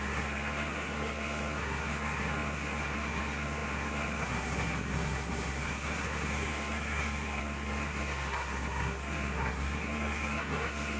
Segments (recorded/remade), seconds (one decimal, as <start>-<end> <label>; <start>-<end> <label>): 0.0-11.0 remade